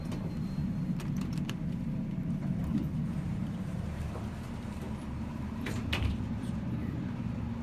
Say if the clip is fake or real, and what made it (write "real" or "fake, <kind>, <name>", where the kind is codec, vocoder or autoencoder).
fake, vocoder, BigVGAN v2